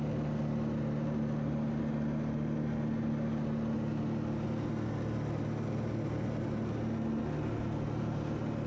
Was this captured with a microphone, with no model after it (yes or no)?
yes